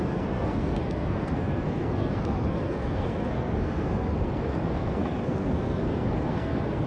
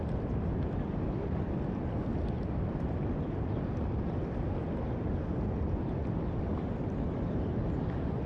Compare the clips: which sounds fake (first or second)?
first